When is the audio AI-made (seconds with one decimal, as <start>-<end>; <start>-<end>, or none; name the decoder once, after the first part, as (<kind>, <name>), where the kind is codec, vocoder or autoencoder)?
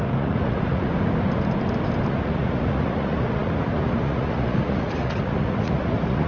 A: 0.0-0.9 (vocoder, Vocos); 2.1-6.3